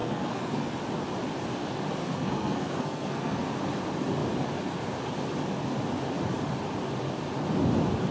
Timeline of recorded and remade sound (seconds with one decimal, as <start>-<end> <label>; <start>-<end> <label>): 0.0-0.8 remade; 0.8-2.0 recorded; 2.0-3.5 remade; 3.5-8.1 recorded